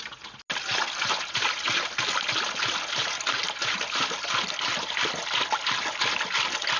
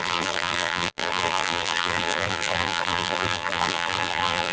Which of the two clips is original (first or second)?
first